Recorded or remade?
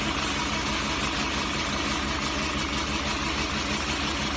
recorded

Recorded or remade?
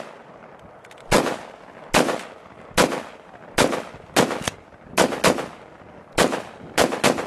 recorded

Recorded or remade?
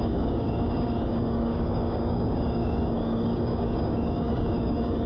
remade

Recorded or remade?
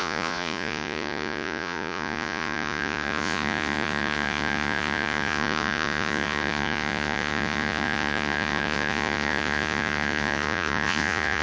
remade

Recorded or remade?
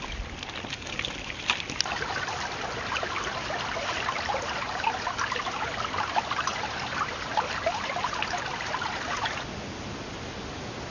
recorded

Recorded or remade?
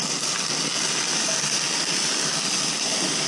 recorded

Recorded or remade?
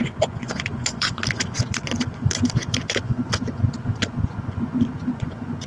remade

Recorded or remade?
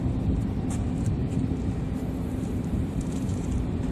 remade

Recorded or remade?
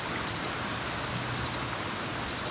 recorded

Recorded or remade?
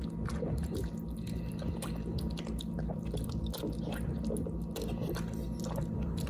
recorded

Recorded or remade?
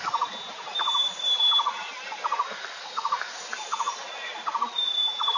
recorded